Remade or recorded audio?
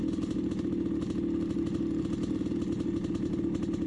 recorded